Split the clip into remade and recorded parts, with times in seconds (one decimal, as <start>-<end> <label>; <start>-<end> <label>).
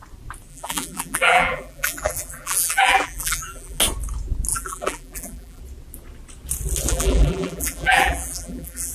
0.0-0.5 recorded; 0.5-3.8 remade; 3.8-4.5 recorded; 4.5-5.6 remade; 5.6-6.9 recorded; 6.9-8.9 remade